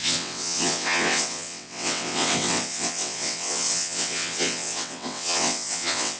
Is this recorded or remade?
remade